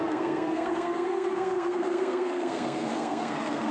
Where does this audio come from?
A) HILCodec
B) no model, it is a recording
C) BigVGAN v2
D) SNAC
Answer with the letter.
D